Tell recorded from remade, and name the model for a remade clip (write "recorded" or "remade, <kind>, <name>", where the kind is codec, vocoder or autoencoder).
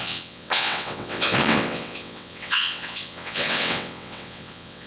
remade, vocoder, WaveNeXt